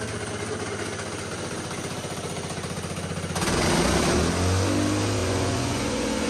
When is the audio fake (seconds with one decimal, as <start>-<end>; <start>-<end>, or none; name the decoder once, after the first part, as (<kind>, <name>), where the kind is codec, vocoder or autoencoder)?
5.2-6.3 (vocoder, Vocos)